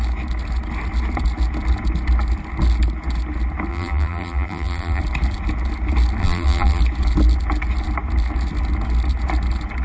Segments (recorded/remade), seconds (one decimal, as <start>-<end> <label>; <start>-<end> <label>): 0.0-3.7 recorded; 3.7-5.0 remade; 5.0-6.2 recorded; 6.2-6.8 remade; 6.8-9.8 recorded